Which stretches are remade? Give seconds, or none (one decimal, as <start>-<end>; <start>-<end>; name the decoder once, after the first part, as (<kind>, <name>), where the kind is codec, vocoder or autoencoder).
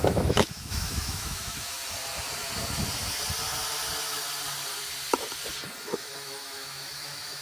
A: 0.0-1.8 (autoencoder, DAC-VAE); 5.8-7.4